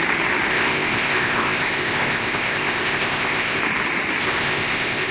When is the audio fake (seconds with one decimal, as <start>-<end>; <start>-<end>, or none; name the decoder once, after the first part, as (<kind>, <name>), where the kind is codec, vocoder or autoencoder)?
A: 0.5-3.6 (codec, ZipCodec); 4.2-5.1